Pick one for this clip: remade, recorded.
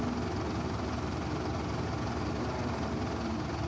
recorded